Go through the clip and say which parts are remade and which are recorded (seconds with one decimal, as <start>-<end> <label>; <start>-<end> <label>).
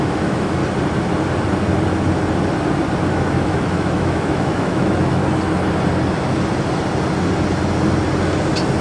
0.0-0.6 remade; 0.6-3.1 recorded; 3.1-5.2 remade; 5.2-8.8 recorded